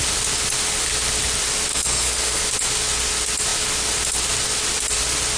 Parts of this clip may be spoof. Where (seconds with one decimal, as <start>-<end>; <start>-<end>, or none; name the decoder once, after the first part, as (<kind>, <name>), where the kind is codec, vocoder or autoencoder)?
1.7-2.4 (codec, SNAC)